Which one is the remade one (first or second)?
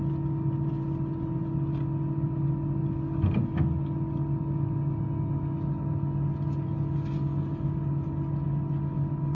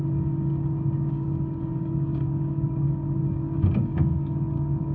second